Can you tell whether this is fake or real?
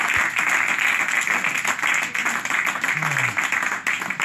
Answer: real